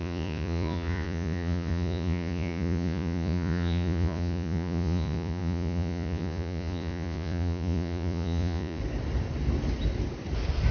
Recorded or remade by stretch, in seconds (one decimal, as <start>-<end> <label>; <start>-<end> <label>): 0.0-8.8 remade; 8.8-10.7 recorded